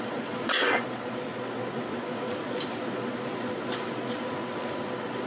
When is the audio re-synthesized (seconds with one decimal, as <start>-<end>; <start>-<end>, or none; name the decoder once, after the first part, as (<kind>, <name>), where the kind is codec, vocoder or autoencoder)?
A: 0.0-5.3 (vocoder, Vocos)